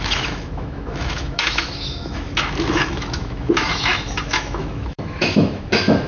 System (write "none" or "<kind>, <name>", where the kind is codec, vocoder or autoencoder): autoencoder, DAC-VAE